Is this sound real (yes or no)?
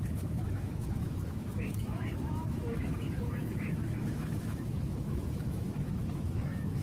no